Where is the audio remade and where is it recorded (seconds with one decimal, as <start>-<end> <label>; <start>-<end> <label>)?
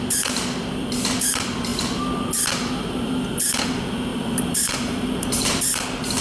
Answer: 0.0-4.1 recorded; 4.1-5.6 remade; 5.6-6.2 recorded